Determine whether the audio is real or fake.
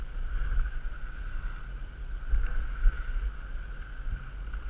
real